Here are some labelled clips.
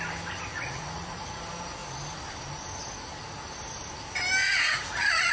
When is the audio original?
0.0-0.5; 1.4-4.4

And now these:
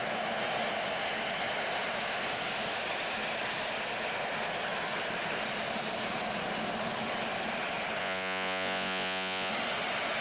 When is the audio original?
0.0-8.0; 9.5-10.2

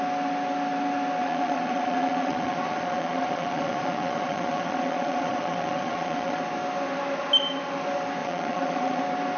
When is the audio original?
0.0-1.2; 6.4-8.2; 9.0-9.4

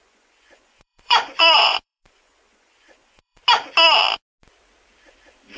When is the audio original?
3.4-5.6

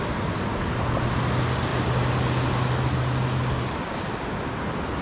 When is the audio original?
0.0-5.0

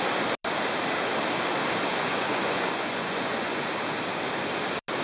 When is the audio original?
0.0-1.9; 3.7-5.0

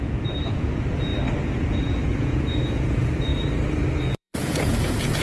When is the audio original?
1.1-1.6; 3.3-4.0

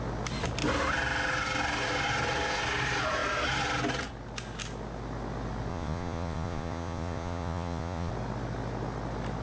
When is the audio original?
0.0-5.7; 8.1-9.4